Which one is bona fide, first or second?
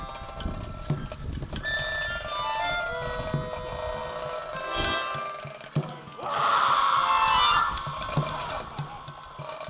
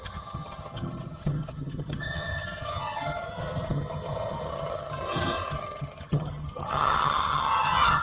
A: first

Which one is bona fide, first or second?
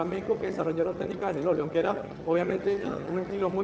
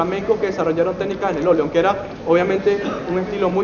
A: second